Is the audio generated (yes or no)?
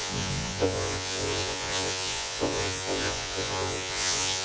yes